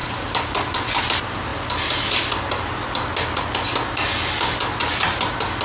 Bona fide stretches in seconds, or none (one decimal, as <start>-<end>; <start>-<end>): 0.0-1.5; 3.4-5.6